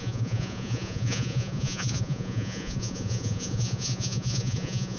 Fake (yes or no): yes